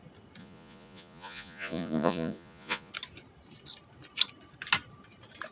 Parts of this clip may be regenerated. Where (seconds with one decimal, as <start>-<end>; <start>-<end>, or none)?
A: 0.4-2.9